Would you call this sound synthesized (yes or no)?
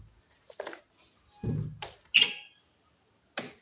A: no